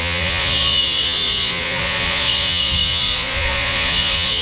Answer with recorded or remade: remade